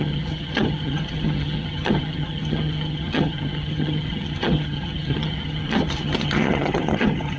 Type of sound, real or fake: fake